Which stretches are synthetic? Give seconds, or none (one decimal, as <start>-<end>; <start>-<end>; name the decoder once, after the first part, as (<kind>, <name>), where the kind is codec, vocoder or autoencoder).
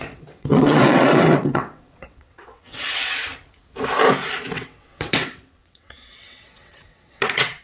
0.0-3.2 (vocoder, WaveNeXt); 4.5-7.6